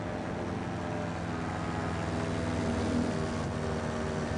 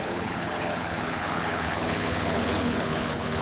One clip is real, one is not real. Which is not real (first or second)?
second